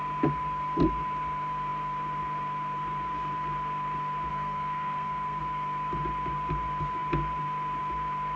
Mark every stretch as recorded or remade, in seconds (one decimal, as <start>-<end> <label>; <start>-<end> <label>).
0.0-4.3 recorded; 4.3-5.4 remade; 5.4-8.4 recorded